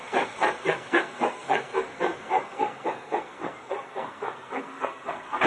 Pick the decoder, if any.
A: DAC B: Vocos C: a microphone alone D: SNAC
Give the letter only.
D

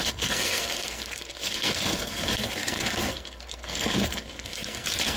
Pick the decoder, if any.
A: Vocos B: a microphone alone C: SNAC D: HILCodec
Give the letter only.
C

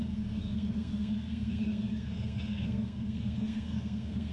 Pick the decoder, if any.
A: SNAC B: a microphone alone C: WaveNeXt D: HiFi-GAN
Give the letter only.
A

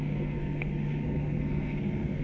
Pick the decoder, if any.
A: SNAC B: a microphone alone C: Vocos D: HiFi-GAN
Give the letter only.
A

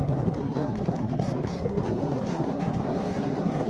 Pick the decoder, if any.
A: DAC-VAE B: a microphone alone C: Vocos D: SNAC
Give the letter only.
D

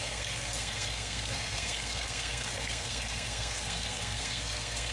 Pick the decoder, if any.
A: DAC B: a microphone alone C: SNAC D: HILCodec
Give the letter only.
C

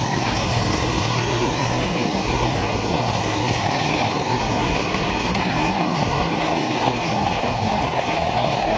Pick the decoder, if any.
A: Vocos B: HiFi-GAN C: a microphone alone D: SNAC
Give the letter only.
D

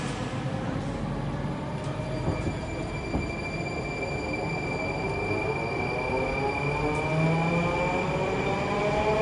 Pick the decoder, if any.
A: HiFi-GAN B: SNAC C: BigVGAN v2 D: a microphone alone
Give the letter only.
D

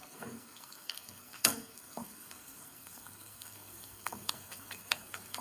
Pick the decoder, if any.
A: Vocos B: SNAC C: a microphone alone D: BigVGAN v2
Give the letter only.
B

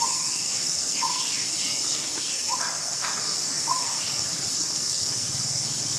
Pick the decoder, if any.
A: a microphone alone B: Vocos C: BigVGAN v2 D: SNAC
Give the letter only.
D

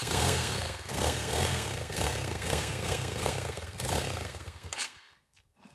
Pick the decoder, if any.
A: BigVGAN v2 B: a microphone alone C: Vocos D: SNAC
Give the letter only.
D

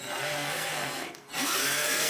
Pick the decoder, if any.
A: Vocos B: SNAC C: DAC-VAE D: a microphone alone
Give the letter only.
B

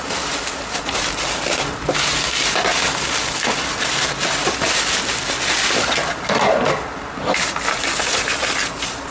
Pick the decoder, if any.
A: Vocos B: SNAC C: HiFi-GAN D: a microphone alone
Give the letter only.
D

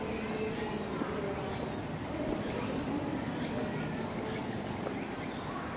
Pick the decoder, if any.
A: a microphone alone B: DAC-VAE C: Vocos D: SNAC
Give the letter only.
A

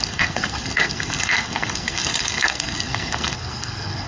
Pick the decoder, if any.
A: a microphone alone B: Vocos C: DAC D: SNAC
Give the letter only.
D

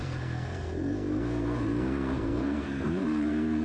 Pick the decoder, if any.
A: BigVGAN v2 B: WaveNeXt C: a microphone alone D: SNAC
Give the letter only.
D